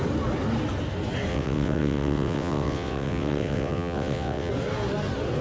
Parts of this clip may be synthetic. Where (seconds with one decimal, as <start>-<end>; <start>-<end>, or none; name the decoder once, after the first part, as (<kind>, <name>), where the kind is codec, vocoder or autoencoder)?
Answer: 1.3-4.5 (vocoder, WaveNeXt)